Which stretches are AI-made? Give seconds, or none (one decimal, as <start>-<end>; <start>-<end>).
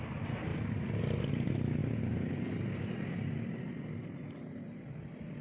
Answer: none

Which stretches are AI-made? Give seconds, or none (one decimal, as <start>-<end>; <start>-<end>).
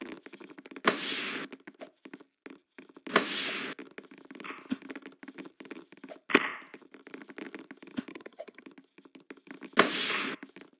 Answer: 8.1-8.6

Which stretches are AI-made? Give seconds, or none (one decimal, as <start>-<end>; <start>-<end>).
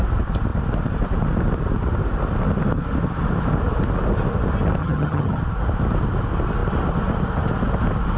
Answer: 4.8-5.4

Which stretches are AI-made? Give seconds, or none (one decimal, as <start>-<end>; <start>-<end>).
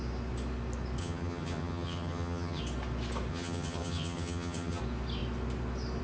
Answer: 1.0-2.6; 3.3-4.8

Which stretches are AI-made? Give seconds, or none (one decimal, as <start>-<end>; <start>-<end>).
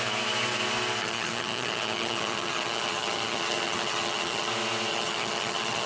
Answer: 1.0-4.5; 4.9-5.9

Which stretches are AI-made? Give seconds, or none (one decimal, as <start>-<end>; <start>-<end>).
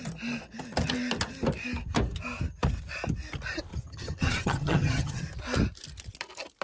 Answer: 3.7-5.2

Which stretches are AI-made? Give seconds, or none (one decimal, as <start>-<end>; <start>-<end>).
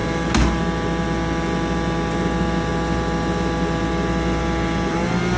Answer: none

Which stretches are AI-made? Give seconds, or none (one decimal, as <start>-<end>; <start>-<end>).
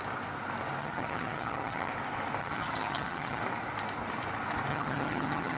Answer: 0.8-1.9; 2.4-3.4; 4.7-5.6